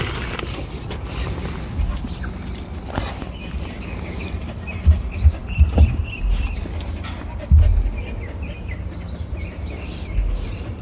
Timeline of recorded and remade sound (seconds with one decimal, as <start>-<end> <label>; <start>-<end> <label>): 0.0-10.8 recorded